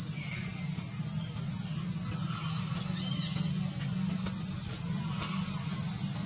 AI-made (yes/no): no